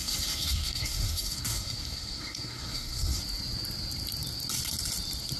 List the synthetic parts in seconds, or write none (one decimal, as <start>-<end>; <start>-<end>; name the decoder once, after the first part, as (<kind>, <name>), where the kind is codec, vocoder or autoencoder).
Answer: 0.0-3.2 (codec, SNAC)

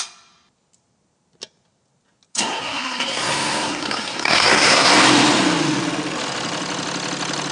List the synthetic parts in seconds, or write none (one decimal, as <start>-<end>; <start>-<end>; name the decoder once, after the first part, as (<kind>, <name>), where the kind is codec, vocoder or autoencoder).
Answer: 2.3-4.9 (codec, SNAC)

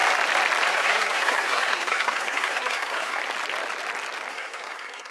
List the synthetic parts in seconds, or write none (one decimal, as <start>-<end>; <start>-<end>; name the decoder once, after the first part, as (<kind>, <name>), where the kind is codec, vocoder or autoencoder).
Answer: 0.7-3.2 (codec, SNAC); 4.3-5.1

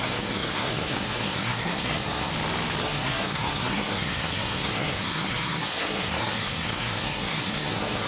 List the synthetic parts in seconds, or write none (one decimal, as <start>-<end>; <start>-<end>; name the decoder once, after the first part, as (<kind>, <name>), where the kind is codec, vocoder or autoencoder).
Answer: 0.0-2.3 (codec, SNAC); 2.8-8.1

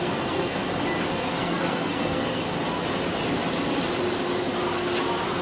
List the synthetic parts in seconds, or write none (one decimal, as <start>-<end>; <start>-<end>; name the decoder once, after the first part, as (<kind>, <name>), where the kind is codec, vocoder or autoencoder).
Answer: 0.0-0.6 (codec, SNAC); 1.1-2.4

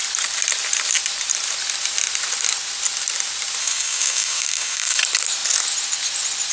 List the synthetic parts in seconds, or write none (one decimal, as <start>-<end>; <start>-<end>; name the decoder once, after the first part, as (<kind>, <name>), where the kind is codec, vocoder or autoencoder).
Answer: 3.6-5.0 (codec, SNAC)

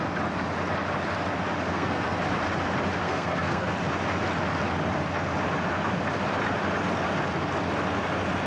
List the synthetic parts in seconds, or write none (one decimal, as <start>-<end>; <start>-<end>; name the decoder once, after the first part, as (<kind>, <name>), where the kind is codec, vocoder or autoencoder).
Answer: 1.7-2.2 (codec, SNAC); 3.0-3.7